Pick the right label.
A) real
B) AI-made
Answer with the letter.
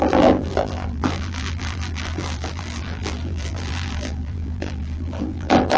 B